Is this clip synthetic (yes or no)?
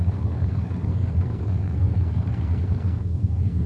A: yes